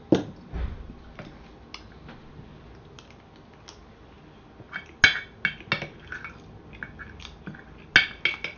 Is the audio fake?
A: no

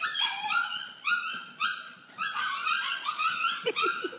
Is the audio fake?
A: yes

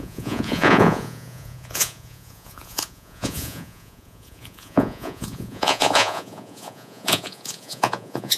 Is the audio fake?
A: yes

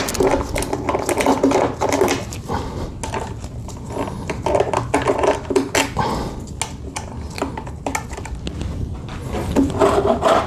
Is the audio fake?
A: no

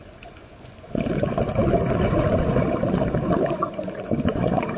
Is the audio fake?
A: yes